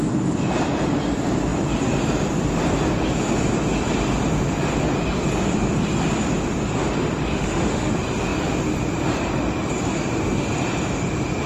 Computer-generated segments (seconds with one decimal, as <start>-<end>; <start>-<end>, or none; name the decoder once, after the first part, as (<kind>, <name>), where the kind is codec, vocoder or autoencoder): 7.3-7.9 (autoencoder, DAC-VAE)